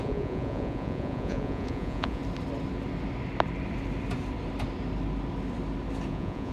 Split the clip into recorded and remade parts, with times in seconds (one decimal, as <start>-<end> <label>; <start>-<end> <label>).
0.0-2.2 remade; 2.2-6.1 recorded; 6.1-6.5 remade